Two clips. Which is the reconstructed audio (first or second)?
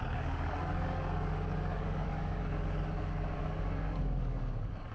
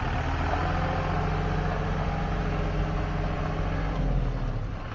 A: first